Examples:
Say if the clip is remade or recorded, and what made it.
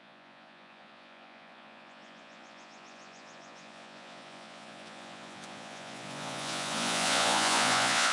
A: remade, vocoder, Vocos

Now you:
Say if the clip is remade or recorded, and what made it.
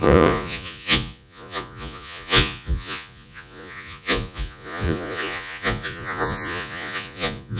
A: remade, vocoder, Vocos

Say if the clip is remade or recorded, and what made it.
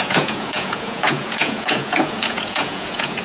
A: remade, vocoder, Vocos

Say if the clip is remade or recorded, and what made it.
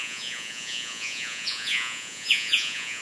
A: remade, vocoder, Vocos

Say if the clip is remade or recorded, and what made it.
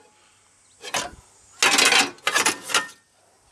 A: recorded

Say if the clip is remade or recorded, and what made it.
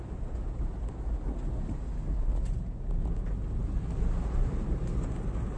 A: recorded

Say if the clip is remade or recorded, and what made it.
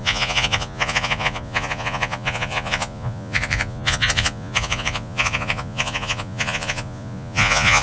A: remade, vocoder, Vocos